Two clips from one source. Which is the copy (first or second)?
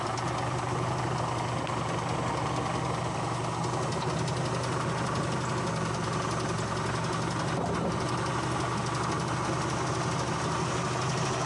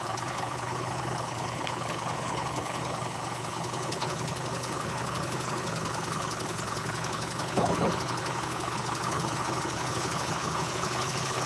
second